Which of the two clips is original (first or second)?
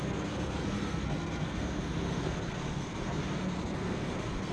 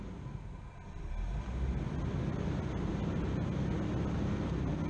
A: second